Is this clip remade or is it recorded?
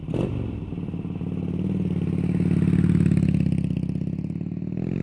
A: recorded